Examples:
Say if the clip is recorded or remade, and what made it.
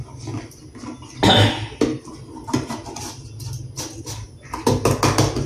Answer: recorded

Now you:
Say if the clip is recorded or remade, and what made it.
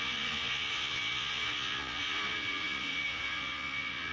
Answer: remade, vocoder, Vocos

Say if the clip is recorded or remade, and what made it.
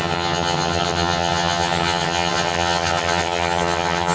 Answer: remade, vocoder, HiFi-GAN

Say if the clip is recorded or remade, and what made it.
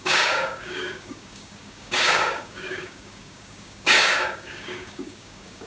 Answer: remade, codec, DAC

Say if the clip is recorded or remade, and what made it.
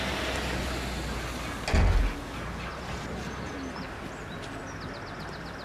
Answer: recorded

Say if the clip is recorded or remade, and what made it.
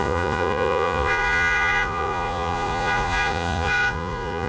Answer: remade, vocoder, Vocos